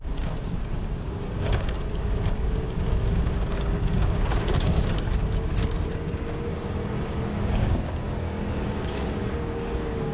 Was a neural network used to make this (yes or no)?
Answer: yes